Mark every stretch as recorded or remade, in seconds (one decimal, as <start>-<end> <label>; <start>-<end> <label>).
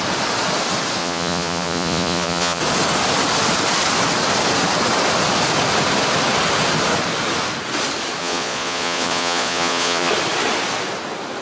0.0-1.0 recorded; 1.0-2.6 remade; 2.6-8.2 recorded; 8.2-10.1 remade; 10.1-11.4 recorded